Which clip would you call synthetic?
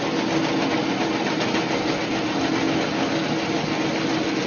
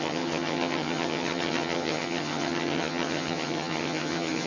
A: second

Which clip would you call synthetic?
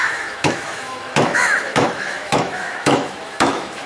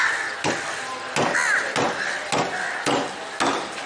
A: first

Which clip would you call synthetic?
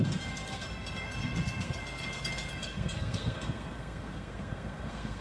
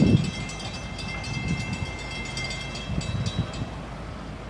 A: first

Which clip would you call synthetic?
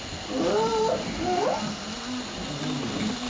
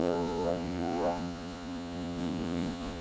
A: second